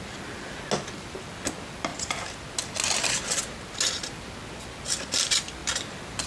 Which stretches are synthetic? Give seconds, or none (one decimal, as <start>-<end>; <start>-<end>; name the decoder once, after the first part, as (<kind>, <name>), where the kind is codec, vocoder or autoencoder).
none

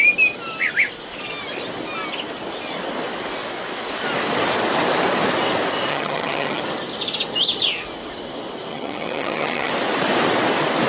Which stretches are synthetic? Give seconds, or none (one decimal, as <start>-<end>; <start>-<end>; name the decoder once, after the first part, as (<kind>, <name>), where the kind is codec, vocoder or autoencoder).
5.9-6.6 (vocoder, HiFi-GAN); 8.7-9.7

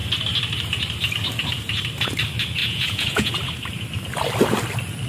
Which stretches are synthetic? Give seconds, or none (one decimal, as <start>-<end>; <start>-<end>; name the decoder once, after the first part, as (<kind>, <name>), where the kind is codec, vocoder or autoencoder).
2.6-3.3 (vocoder, Vocos)